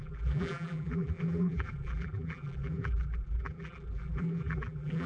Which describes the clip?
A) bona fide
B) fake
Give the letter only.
B